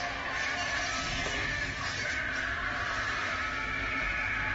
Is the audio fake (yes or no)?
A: no